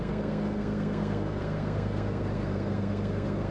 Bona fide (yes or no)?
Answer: no